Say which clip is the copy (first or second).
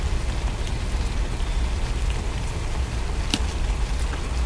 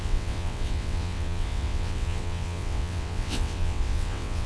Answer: second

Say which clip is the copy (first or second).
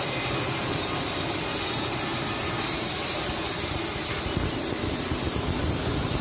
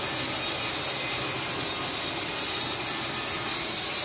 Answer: first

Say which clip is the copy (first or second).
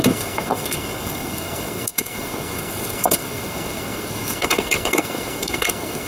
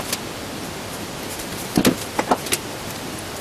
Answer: first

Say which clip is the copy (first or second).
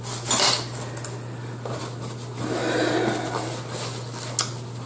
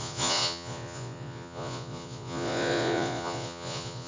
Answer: second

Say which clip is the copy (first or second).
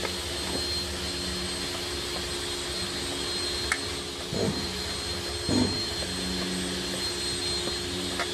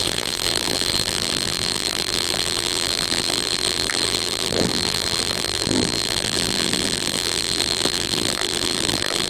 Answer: second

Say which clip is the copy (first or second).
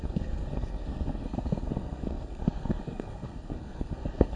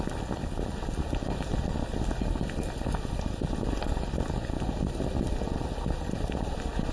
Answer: first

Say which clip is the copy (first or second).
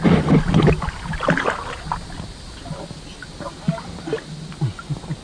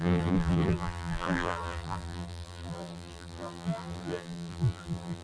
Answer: second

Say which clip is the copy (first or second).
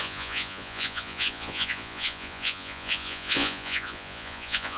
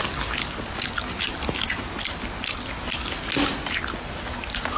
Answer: first